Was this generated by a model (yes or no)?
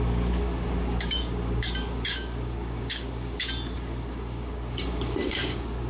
yes